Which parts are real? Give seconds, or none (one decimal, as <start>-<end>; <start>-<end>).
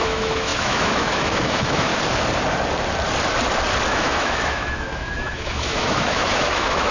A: 1.9-3.9